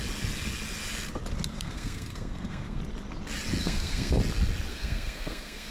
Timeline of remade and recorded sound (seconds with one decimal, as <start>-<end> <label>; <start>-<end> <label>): 0.0-1.5 recorded; 1.5-2.8 remade; 2.8-3.6 recorded; 3.6-4.2 remade; 4.2-4.7 recorded; 4.7-5.7 remade